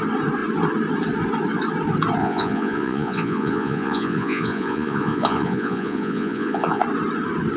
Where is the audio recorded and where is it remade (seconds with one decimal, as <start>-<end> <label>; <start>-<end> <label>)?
0.0-2.2 recorded; 2.2-6.8 remade; 6.8-7.6 recorded